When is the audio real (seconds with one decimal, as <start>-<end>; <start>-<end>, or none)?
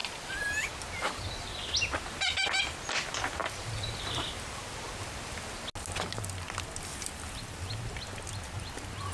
1.7-3.4; 4.6-9.1